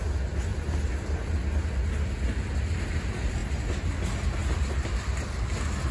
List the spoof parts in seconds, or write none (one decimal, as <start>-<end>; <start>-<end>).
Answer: 4.4-5.4